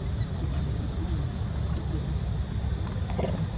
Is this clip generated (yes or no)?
no